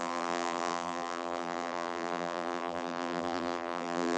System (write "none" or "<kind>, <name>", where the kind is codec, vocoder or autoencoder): vocoder, BigVGAN v2